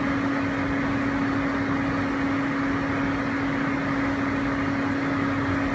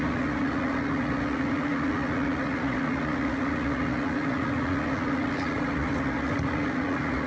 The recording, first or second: first